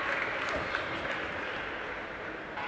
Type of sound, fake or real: real